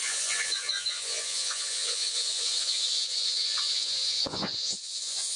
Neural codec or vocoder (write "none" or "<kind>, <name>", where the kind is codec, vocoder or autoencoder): vocoder, Vocos